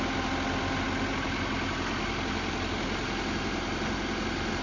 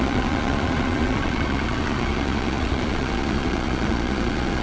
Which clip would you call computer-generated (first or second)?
second